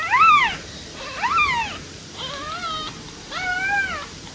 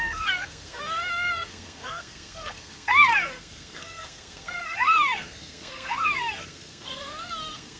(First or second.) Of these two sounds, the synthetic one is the second